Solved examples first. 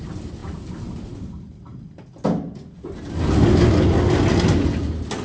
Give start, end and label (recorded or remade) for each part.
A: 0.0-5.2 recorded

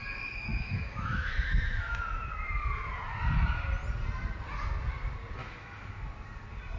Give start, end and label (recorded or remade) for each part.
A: 0.0-0.5 recorded; 0.5-2.0 remade; 2.0-5.4 recorded; 5.4-6.1 remade; 6.1-6.8 recorded

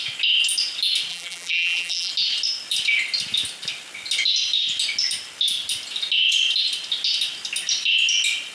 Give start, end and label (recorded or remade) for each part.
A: 0.0-1.1 recorded; 1.1-2.1 remade; 2.1-8.5 recorded

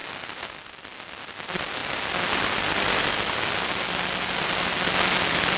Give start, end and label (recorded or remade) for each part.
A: 0.0-5.6 recorded

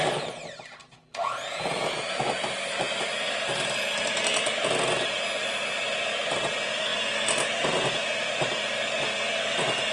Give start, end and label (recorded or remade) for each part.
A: 0.0-0.8 recorded; 0.8-2.0 remade; 2.0-9.9 recorded

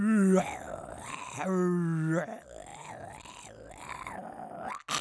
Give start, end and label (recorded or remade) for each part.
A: 0.0-5.0 recorded

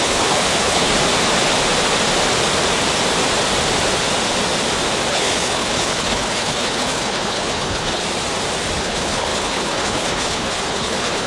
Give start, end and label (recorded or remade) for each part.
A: 0.0-0.9 remade; 0.9-5.1 recorded; 5.1-8.0 remade; 8.0-8.8 recorded; 8.8-11.3 remade